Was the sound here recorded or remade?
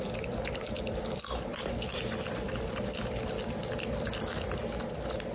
recorded